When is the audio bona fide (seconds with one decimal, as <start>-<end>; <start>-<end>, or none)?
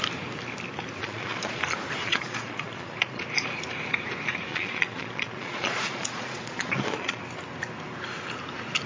0.0-1.0; 1.6-2.0; 3.2-4.5; 7.2-8.9